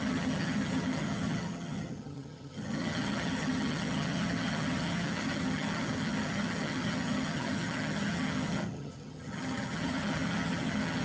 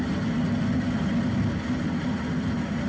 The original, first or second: second